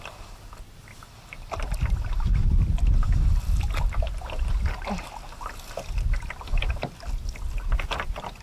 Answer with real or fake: real